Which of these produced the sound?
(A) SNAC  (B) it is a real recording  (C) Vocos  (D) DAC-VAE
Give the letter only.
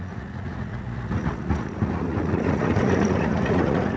C